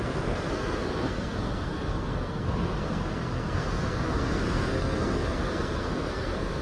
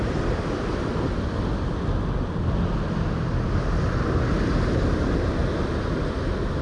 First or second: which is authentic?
second